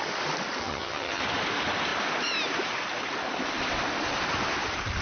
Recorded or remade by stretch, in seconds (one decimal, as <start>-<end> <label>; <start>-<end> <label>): 0.0-0.6 recorded; 0.6-1.2 remade; 1.2-5.0 recorded